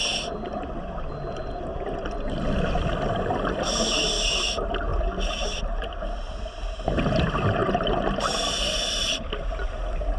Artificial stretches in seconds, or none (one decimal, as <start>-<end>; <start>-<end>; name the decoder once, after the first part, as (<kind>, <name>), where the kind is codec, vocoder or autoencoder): 7.6-9.3 (vocoder, BigVGAN v2)